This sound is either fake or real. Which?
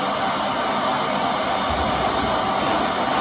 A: real